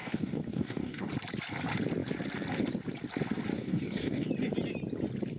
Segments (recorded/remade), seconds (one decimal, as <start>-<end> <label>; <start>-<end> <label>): 0.0-1.1 remade; 1.1-3.5 recorded; 3.5-4.3 remade; 4.3-5.4 recorded